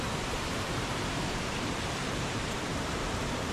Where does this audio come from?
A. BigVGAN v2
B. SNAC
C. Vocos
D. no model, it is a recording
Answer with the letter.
A